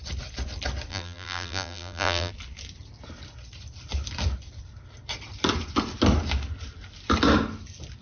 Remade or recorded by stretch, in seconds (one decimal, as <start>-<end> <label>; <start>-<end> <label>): 0.0-0.9 recorded; 0.9-2.3 remade; 2.3-8.0 recorded